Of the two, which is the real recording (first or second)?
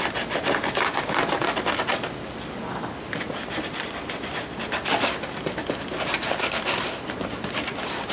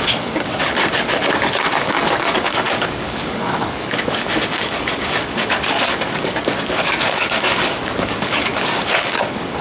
first